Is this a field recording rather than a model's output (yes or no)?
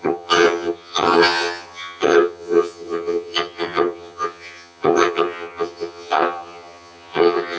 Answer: no